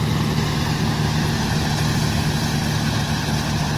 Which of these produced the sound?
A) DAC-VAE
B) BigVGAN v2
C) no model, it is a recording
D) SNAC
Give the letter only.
C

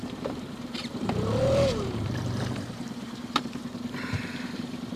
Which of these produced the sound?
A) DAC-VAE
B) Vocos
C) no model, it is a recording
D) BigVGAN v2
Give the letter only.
D